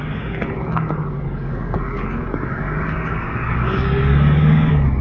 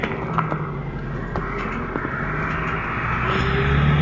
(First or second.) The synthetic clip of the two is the first